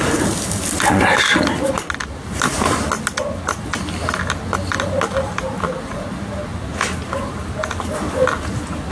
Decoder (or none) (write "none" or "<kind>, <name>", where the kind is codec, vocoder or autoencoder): none